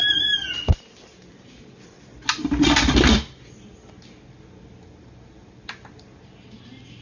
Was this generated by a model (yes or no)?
no